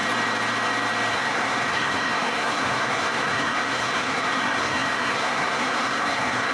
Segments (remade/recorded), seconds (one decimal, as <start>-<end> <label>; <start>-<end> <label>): 0.0-1.1 recorded; 1.1-6.5 remade